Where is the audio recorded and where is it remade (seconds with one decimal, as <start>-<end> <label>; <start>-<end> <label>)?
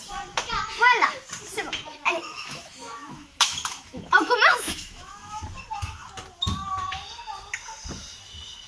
0.0-1.9 recorded; 1.9-5.4 remade; 5.4-8.7 recorded